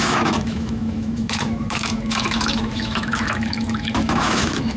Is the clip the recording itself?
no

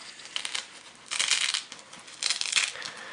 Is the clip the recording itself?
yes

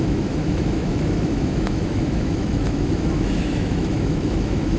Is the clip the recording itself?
no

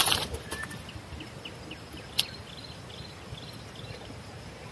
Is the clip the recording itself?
yes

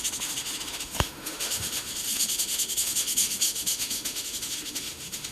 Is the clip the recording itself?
no